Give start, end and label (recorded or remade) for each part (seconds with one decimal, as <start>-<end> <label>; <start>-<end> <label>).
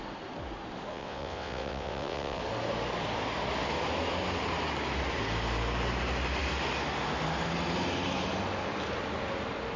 0.0-0.9 recorded; 0.9-2.4 remade; 2.4-9.8 recorded